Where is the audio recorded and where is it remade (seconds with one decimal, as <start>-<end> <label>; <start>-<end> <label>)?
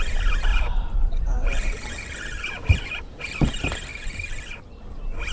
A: 0.0-0.5 recorded; 0.5-2.7 remade; 2.7-3.9 recorded; 3.9-4.8 remade; 4.8-5.3 recorded